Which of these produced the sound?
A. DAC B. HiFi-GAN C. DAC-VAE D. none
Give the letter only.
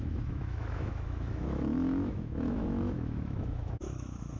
C